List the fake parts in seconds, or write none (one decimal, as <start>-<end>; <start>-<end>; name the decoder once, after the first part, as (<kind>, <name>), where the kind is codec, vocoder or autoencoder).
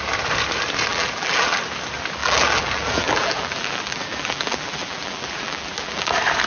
0.9-1.6 (vocoder, BigVGAN v2); 2.2-6.1